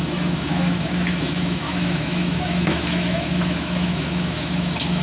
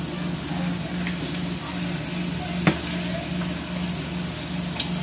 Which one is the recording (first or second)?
second